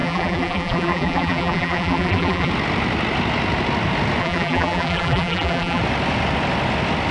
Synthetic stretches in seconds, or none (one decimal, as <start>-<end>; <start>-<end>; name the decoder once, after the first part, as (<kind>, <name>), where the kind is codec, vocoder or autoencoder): 0.0-2.5 (vocoder, BigVGAN v2); 4.2-5.8